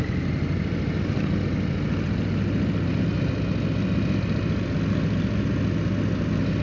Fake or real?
real